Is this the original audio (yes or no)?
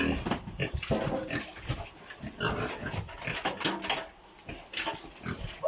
yes